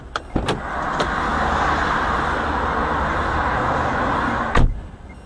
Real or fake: real